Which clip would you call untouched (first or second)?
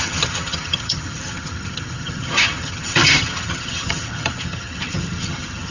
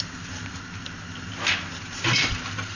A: second